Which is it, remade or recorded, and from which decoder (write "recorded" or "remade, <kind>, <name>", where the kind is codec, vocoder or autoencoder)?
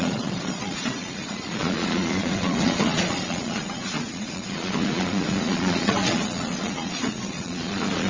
remade, vocoder, Vocos